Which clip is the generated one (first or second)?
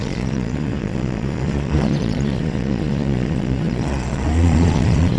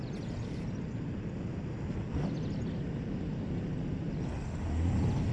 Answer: first